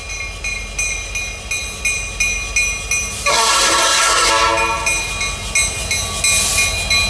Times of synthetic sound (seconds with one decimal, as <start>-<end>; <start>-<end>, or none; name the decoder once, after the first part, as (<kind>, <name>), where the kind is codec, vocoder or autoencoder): 3.3-4.3 (codec, SNAC)